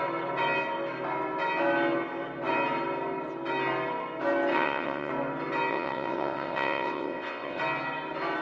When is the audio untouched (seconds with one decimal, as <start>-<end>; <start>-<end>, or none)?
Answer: 0.0-4.5; 5.1-5.7; 7.6-8.4